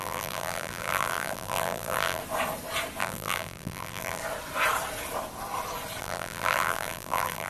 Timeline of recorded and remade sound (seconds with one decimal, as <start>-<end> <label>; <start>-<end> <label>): 0.0-2.2 remade; 2.2-3.0 recorded; 3.0-4.2 remade; 4.2-6.0 recorded; 6.0-7.5 remade